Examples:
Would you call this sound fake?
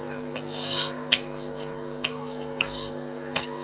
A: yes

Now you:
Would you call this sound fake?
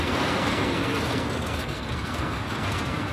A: yes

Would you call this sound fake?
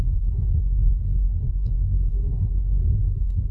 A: yes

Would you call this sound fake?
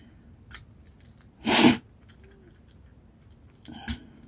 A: no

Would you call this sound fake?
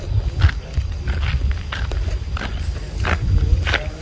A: no